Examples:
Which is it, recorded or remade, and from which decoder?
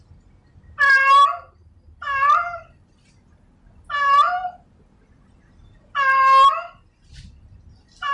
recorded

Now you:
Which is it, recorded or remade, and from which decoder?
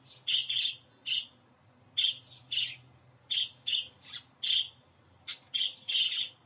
recorded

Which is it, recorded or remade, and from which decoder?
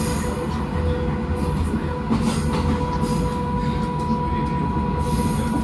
recorded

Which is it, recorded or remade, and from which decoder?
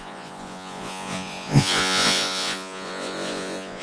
remade, vocoder, Vocos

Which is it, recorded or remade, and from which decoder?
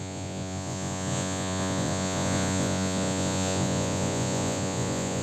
remade, vocoder, Vocos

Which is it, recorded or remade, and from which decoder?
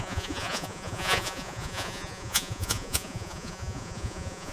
remade, vocoder, Vocos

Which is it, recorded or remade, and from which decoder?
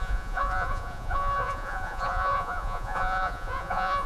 remade, vocoder, Vocos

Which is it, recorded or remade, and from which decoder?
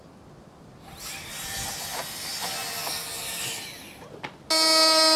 recorded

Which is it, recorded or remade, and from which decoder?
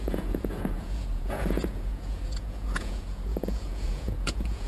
remade, vocoder, Vocos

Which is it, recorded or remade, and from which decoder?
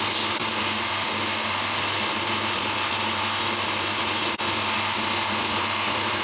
recorded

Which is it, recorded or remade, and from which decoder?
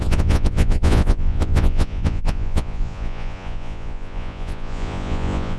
remade, vocoder, Vocos